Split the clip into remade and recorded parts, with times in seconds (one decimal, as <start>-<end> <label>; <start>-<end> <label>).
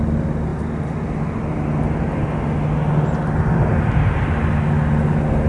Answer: 0.0-5.5 recorded